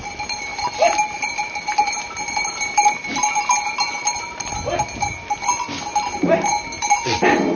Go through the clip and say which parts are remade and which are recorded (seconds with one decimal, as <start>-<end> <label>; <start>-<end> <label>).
0.0-0.5 recorded; 0.5-4.2 remade; 4.2-7.5 recorded

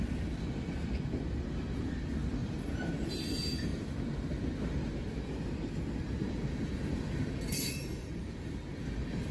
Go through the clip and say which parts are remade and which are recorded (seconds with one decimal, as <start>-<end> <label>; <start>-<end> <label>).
0.0-2.4 recorded; 2.4-3.1 remade; 3.1-8.0 recorded; 8.0-8.5 remade; 8.5-9.3 recorded

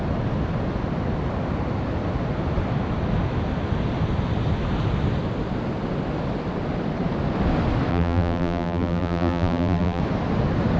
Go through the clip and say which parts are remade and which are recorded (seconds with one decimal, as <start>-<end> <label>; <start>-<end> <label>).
0.0-7.9 recorded; 7.9-10.0 remade; 10.0-10.8 recorded

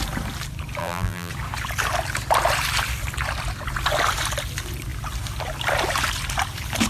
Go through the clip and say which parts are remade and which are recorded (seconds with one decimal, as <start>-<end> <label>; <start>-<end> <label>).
0.0-0.8 recorded; 0.8-1.3 remade; 1.3-6.9 recorded

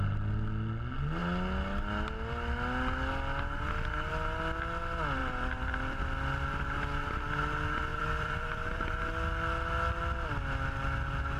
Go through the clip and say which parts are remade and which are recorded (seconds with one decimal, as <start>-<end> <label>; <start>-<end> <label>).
0.0-5.2 recorded; 5.2-6.0 remade; 6.0-7.9 recorded; 7.9-9.0 remade; 9.0-11.4 recorded

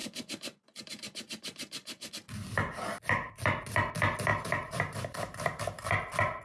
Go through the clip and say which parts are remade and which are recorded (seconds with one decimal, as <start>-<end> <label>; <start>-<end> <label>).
0.0-2.1 remade; 2.1-4.3 recorded; 4.3-5.6 remade; 5.6-6.4 recorded

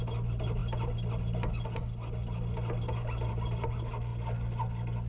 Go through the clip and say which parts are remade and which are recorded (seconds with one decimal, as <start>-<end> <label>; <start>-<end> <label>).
0.0-5.1 recorded